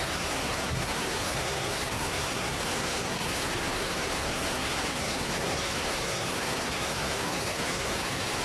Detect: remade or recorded remade